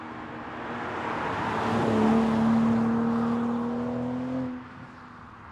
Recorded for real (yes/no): yes